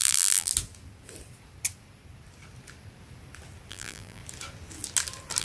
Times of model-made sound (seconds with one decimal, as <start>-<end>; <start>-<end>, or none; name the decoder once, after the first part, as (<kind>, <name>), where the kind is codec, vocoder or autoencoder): 0.0-0.5 (vocoder, BigVGAN v2); 3.7-4.2